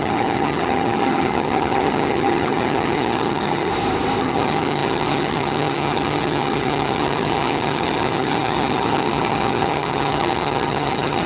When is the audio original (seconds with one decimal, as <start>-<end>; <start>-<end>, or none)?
3.7-4.2